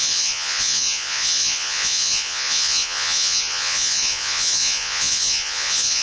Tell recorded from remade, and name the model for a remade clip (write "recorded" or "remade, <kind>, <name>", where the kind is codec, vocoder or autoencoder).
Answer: remade, vocoder, Vocos